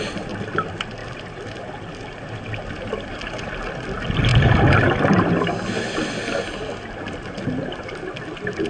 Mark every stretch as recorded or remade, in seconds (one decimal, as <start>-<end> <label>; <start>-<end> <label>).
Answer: 0.0-4.3 recorded; 4.3-5.3 remade; 5.3-8.7 recorded